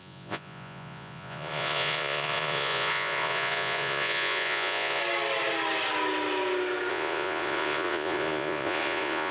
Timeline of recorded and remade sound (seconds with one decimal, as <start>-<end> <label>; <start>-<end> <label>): 0.0-5.0 remade; 5.0-6.9 recorded; 6.9-9.3 remade